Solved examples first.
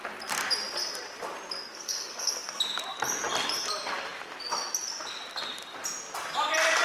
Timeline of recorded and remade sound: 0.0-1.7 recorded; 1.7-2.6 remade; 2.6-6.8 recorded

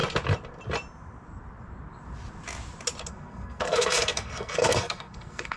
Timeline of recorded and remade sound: 0.0-3.1 recorded; 3.1-5.6 remade

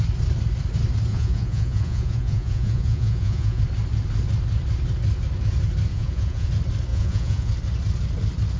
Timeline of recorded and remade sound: 0.0-1.1 recorded; 1.1-3.6 remade; 3.6-5.9 recorded; 5.9-6.5 remade; 6.5-6.9 recorded; 6.9-7.5 remade; 7.5-8.6 recorded

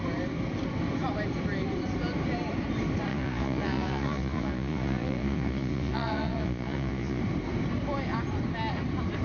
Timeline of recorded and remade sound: 0.0-3.1 recorded; 3.1-7.2 remade; 7.2-9.2 recorded

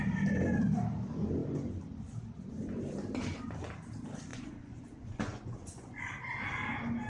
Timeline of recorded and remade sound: 0.0-4.3 recorded; 4.3-6.1 remade; 6.1-7.1 recorded